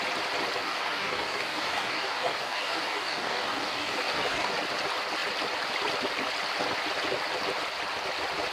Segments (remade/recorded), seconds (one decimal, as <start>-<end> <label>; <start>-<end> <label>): 0.0-0.6 recorded; 0.6-4.5 remade; 4.5-8.5 recorded